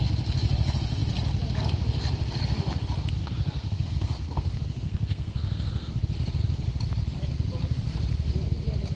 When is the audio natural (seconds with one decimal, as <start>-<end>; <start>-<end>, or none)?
0.0-3.2; 5.9-9.0